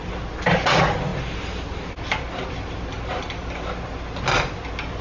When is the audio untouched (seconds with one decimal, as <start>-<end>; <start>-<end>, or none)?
0.0-5.0